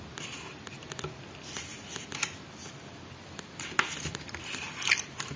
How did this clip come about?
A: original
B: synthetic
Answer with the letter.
A